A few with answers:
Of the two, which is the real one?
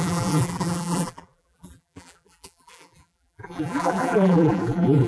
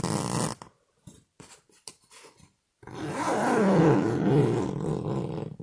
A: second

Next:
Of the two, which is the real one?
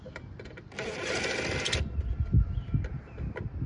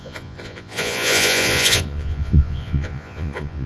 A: first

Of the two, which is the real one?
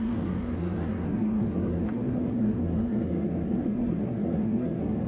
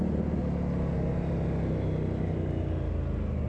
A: second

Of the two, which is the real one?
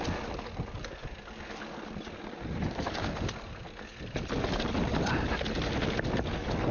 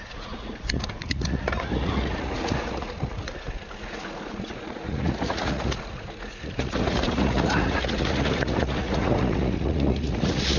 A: first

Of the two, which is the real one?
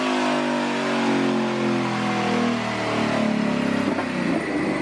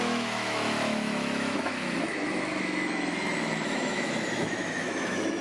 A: first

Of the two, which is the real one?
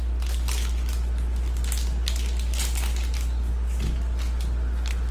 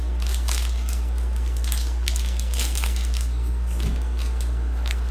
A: first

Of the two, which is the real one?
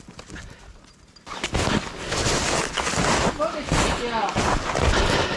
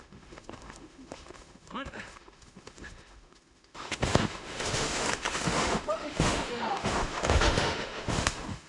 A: first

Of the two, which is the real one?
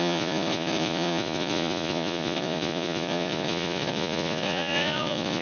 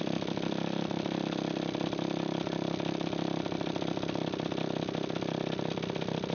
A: second